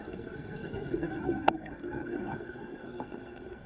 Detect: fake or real fake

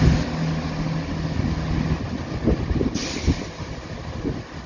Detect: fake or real real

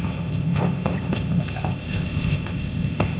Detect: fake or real fake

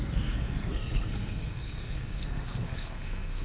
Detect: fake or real fake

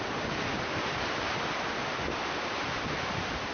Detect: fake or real fake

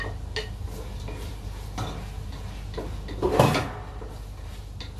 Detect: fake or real real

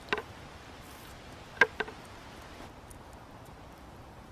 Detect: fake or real real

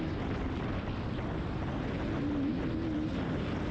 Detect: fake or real real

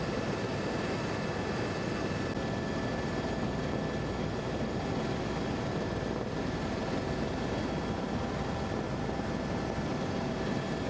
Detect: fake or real real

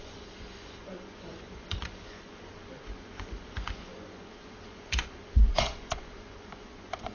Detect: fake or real fake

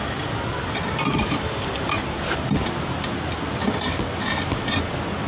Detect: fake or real real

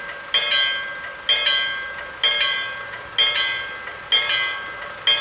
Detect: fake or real real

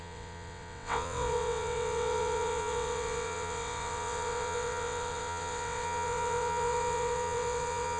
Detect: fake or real fake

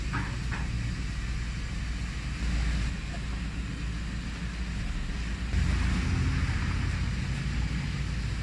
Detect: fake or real real